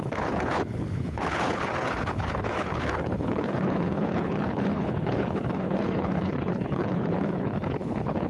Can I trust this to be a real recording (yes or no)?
no